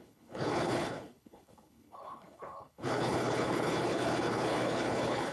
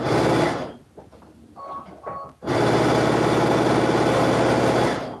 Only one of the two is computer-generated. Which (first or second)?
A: first